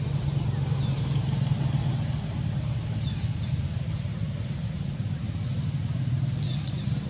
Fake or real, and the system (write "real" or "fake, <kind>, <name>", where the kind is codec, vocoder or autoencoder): real